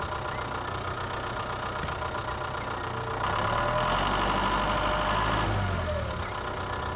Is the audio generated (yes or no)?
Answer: no